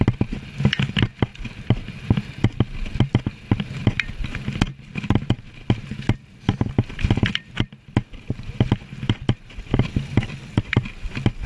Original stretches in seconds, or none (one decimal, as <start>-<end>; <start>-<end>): 0.0-11.5